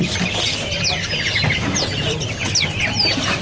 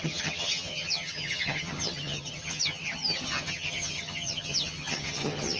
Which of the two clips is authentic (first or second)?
first